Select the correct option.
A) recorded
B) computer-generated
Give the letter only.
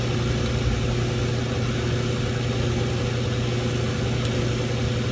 A